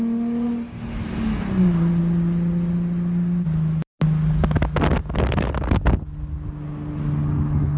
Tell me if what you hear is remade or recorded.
recorded